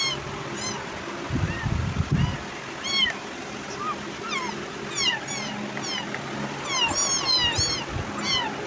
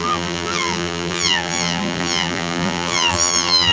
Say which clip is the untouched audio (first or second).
first